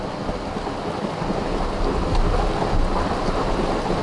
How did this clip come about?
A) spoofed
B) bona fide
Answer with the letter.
B